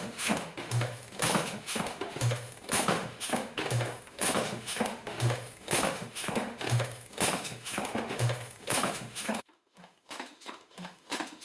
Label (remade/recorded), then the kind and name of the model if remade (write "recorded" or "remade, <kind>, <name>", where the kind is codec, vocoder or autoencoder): remade, autoencoder, DAC-VAE